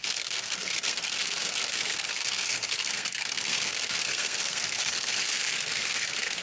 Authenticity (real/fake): fake